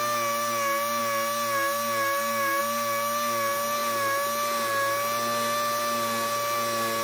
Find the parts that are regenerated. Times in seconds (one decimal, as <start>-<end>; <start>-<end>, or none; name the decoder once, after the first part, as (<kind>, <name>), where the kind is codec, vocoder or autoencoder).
none